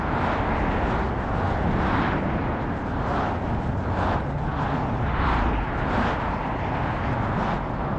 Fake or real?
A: real